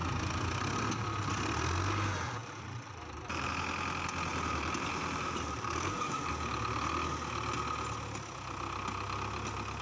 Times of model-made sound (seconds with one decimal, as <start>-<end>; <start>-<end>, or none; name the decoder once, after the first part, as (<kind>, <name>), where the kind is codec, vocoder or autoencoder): 2.4-3.5 (vocoder, BigVGAN v2); 4.3-6.3